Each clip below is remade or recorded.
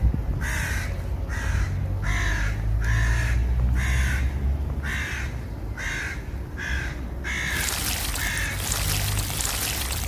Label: recorded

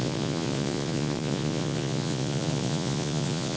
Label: remade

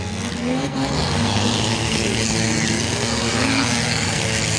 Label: remade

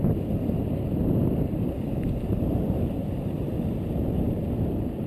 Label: remade